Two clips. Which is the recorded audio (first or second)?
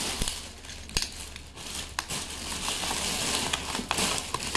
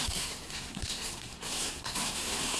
first